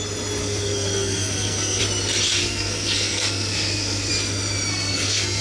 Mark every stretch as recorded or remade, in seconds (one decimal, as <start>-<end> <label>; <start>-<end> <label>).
0.0-0.4 recorded; 0.4-1.8 remade; 1.8-2.4 recorded; 2.4-4.1 remade; 4.1-4.7 recorded; 4.7-5.4 remade